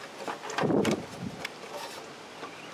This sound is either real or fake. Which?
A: real